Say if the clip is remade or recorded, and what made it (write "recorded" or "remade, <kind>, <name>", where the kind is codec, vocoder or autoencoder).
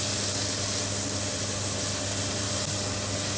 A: recorded